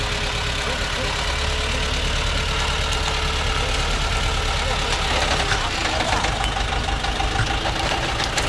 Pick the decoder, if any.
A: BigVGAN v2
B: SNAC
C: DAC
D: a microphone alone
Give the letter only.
D